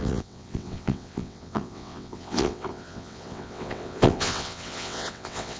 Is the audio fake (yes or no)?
yes